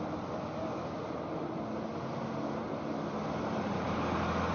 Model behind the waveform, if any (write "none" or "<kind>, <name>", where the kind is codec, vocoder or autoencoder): none